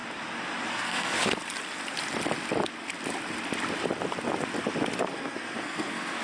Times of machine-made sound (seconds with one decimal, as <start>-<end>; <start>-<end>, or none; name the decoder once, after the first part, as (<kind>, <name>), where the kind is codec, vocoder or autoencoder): 0.7-1.4 (codec, SNAC); 5.1-6.2